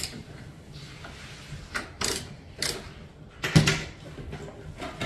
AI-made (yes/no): no